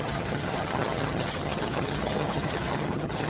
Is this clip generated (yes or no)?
yes